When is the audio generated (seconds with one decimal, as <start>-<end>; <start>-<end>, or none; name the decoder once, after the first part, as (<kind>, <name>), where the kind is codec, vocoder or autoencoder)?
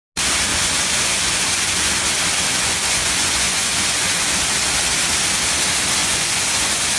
0.5-1.9 (vocoder, Vocos); 2.5-4.3; 6.0-7.0